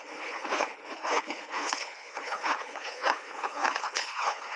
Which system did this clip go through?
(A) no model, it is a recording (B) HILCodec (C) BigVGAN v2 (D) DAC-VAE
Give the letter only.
B